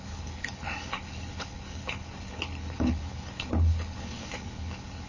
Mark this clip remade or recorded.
remade